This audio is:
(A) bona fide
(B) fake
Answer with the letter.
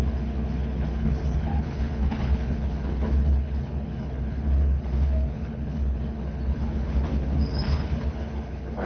B